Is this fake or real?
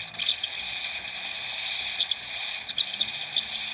real